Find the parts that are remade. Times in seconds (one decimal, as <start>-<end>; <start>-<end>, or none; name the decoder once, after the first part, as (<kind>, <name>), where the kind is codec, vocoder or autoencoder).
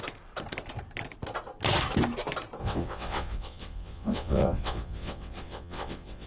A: 2.6-6.3 (vocoder, WaveNeXt)